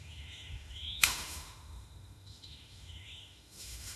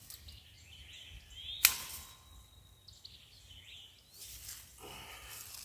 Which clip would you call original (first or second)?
second